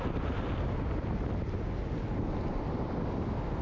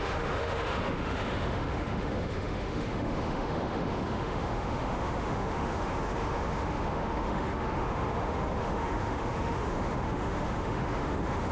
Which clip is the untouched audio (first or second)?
first